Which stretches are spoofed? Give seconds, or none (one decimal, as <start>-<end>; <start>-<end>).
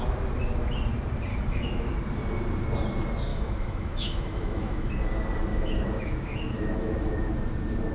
1.3-1.9; 3.3-4.9; 5.5-7.3